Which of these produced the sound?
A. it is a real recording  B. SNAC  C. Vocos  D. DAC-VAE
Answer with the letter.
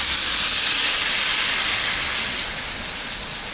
A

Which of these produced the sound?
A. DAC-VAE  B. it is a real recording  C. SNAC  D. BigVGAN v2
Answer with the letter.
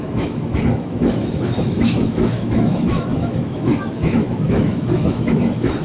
A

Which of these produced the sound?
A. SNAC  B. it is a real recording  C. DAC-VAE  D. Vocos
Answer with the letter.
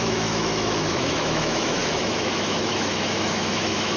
C